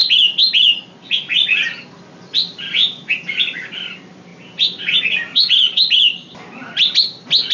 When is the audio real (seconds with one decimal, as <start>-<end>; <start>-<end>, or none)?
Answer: 0.0-7.5